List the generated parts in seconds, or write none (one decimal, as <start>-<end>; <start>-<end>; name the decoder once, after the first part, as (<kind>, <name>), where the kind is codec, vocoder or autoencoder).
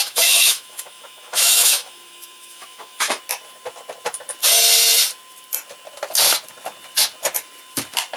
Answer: 0.0-3.2 (autoencoder, DAC-VAE)